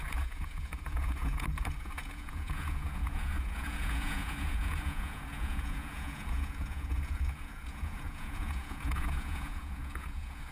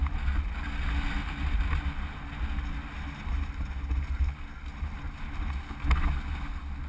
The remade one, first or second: first